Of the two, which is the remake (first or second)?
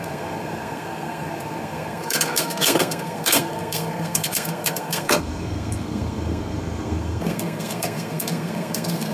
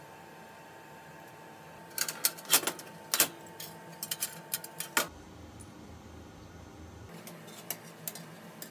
first